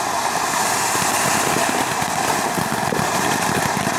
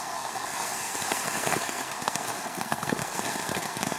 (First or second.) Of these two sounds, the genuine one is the first